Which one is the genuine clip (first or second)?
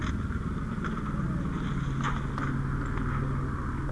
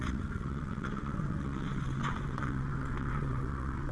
first